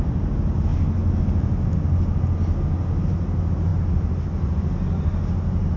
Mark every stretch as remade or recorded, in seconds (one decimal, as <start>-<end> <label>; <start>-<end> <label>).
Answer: 0.0-5.8 recorded